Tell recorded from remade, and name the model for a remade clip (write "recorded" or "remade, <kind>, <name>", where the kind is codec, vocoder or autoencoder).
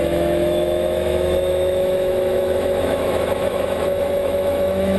remade, autoencoder, DAC-VAE